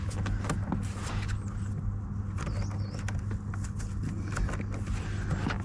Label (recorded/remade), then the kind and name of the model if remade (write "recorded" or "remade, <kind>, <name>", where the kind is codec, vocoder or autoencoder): recorded